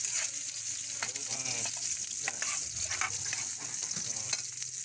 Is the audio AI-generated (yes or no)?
no